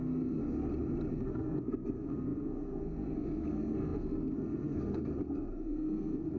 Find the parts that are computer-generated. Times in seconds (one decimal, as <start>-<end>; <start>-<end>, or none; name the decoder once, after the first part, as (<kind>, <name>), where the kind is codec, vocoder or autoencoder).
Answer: 0.0-0.4 (codec, SNAC); 1.1-6.4